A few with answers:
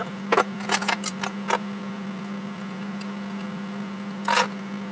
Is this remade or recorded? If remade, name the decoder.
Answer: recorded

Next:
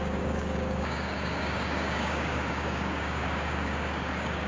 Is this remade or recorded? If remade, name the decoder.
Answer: remade, codec, DAC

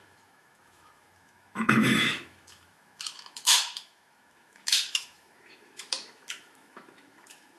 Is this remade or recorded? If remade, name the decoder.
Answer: remade, autoencoder, DAC-VAE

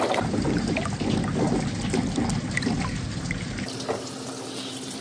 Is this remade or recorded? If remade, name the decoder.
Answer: recorded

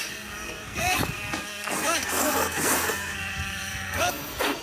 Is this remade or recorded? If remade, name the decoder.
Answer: remade, codec, SNAC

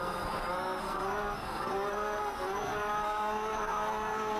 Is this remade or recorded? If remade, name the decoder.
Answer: remade, codec, SNAC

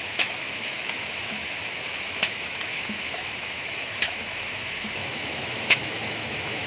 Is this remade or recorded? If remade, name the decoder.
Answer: remade, autoencoder, DAC-VAE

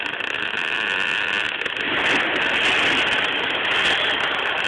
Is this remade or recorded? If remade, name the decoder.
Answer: recorded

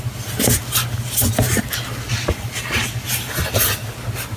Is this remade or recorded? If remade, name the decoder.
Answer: recorded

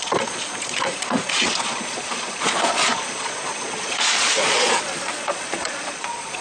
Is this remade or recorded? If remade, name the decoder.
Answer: remade, vocoder, Vocos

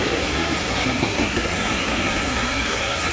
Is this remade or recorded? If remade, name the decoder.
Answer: remade, codec, SNAC